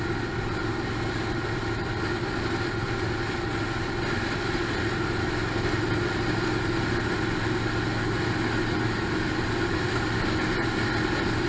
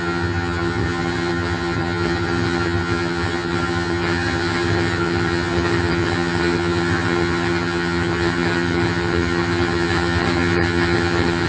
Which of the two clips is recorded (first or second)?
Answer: first